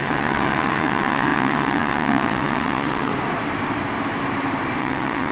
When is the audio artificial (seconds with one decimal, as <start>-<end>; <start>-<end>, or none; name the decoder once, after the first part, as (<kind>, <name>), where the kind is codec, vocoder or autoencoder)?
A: 0.0-3.1 (vocoder, WaveNeXt); 4.8-5.3

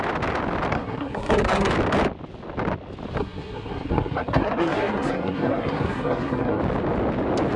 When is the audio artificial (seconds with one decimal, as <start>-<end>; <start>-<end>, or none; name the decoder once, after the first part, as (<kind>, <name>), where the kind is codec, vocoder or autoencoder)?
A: 0.7-1.7 (codec, SNAC); 3.2-6.6

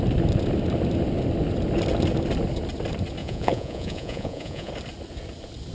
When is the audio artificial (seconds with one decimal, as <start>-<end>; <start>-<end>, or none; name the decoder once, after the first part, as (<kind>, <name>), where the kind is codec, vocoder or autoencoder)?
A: 3.2-4.7 (vocoder, Vocos)